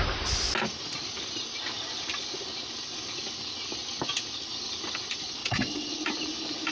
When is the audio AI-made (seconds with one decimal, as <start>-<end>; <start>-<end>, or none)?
5.4-5.9